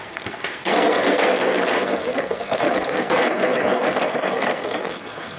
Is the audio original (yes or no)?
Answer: no